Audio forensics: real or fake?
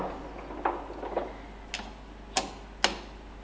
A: real